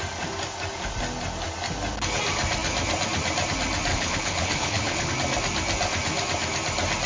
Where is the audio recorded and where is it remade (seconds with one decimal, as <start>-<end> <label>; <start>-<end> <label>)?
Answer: 0.0-3.9 recorded; 3.9-5.1 remade; 5.1-7.1 recorded